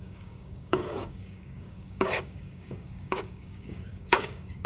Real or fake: fake